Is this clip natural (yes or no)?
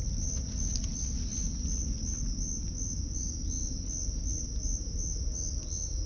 yes